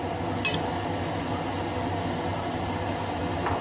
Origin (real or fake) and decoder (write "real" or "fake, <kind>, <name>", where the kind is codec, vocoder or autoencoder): real